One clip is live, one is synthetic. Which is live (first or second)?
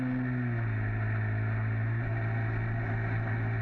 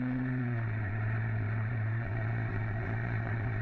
first